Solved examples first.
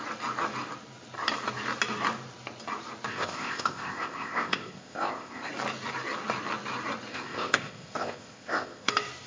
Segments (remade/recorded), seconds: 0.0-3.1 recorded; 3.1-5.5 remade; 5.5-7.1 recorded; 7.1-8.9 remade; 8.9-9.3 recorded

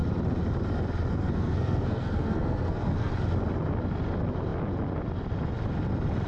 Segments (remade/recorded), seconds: 0.0-1.1 recorded; 1.1-3.1 remade; 3.1-6.3 recorded